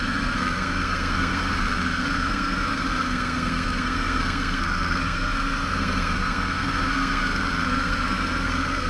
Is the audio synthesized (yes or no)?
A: yes